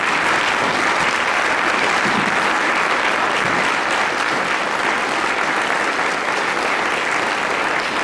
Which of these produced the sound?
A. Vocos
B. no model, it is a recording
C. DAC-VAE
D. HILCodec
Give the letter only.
B